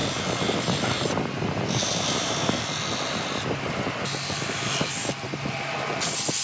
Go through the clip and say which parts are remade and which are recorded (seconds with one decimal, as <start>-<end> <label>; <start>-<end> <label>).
0.0-6.4 recorded